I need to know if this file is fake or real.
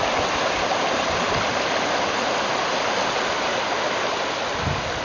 real